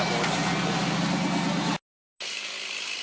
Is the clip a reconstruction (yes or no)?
no